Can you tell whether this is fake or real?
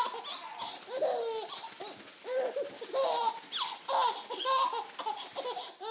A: real